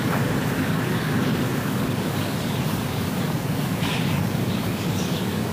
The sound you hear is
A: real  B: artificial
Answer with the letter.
B